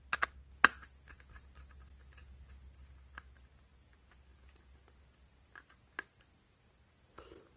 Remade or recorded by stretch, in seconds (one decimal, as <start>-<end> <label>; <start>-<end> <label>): 0.0-7.6 recorded